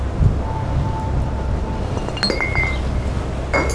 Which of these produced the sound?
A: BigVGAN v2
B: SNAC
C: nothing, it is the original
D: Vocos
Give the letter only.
C